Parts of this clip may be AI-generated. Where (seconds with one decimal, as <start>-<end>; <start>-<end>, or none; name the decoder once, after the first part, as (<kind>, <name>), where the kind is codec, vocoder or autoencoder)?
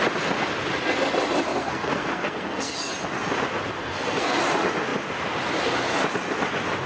1.5-2.9 (codec, SNAC); 3.8-4.4